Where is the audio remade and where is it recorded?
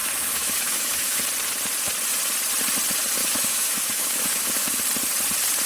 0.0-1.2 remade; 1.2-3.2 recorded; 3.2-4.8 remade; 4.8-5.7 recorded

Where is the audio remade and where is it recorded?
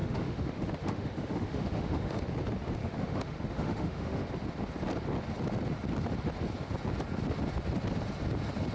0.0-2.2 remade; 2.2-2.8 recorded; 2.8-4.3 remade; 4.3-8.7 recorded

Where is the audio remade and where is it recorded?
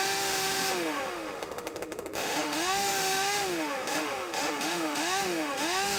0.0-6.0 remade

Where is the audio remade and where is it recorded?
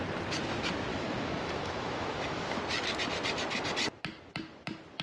0.0-0.9 recorded; 0.9-2.6 remade; 2.6-5.0 recorded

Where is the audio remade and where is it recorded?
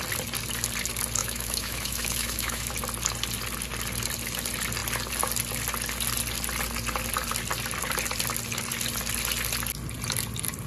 0.0-1.2 recorded; 1.2-2.7 remade; 2.7-10.7 recorded